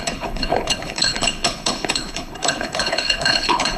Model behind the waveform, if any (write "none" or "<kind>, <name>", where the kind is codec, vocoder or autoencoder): codec, HILCodec